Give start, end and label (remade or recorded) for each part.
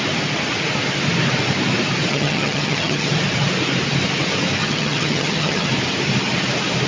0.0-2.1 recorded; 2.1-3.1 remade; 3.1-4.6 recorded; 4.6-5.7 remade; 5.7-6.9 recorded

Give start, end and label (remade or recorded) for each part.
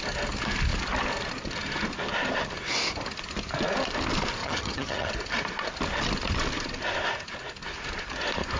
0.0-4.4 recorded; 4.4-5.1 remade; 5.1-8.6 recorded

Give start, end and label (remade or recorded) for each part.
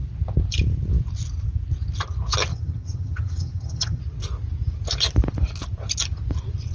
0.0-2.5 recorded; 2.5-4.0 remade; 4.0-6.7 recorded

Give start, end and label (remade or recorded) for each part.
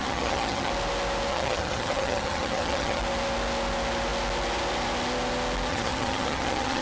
0.0-0.7 remade; 0.7-1.3 recorded; 1.3-3.0 remade; 3.0-5.7 recorded; 5.7-6.8 remade